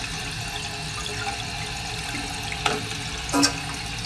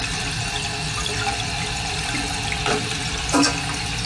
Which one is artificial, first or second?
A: second